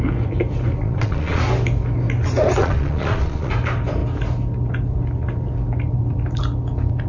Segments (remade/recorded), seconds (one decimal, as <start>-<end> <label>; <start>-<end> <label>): 0.0-0.8 recorded; 0.8-1.4 remade; 1.4-2.6 recorded; 2.6-3.5 remade; 3.5-7.1 recorded